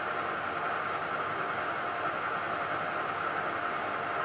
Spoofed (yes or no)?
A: no